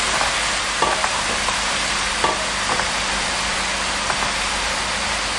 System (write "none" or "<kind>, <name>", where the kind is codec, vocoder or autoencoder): none